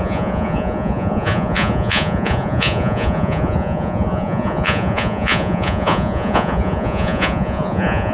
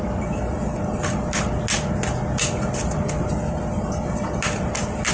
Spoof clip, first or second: first